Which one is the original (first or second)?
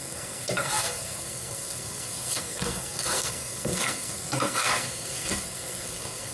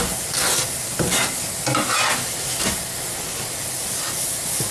second